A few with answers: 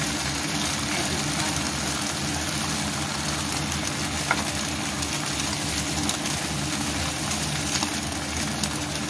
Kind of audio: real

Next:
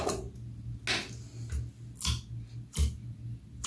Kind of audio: real